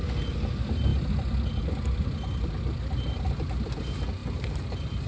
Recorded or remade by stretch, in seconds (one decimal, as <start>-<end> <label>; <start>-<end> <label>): 0.0-5.1 recorded